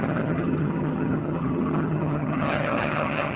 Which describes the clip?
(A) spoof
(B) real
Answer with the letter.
A